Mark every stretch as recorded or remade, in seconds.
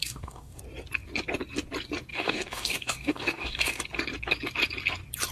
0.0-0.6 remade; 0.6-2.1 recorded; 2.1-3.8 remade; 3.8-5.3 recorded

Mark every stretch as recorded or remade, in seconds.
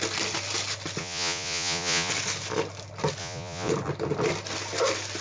0.0-1.0 recorded; 1.0-2.1 remade; 2.1-3.2 recorded; 3.2-3.7 remade; 3.7-5.2 recorded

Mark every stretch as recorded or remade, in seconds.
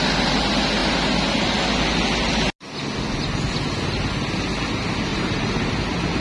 0.0-5.1 recorded; 5.1-5.7 remade; 5.7-6.2 recorded